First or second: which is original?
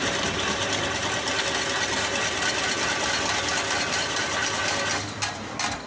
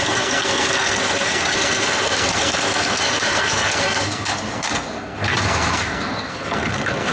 first